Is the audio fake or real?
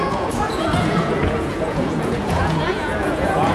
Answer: fake